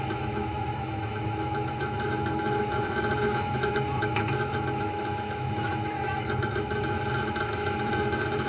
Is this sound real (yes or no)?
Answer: no